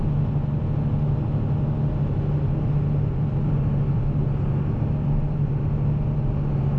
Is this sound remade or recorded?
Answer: recorded